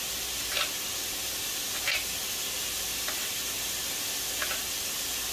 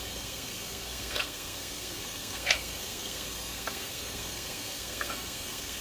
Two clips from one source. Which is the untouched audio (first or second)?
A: first